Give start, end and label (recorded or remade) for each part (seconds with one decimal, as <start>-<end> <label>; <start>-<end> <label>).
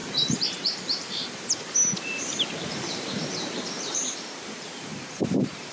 0.0-5.7 remade